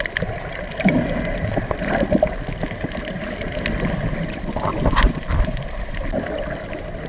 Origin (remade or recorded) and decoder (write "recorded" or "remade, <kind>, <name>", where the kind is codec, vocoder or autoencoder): recorded